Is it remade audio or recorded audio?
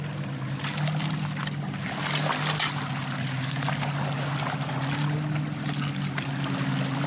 recorded